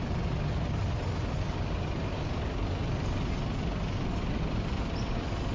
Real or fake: real